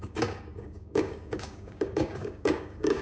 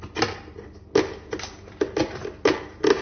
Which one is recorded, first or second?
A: second